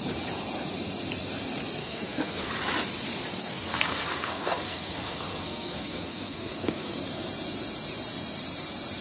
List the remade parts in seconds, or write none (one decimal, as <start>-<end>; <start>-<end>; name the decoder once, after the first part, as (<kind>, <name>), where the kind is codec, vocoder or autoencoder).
1.8-2.5 (codec, SNAC); 3.4-6.9